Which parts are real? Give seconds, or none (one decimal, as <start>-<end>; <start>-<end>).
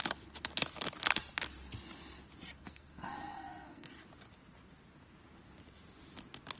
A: 0.0-2.6; 3.9-6.6